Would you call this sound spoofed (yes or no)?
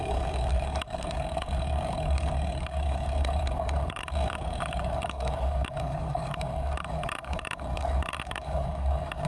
yes